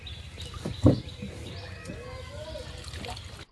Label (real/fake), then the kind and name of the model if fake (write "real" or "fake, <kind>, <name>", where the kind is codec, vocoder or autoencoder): real